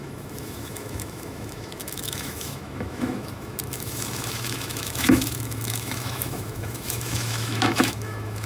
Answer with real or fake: fake